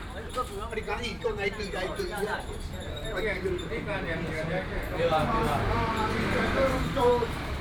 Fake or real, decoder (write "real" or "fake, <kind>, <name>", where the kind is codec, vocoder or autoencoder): fake, vocoder, BigVGAN v2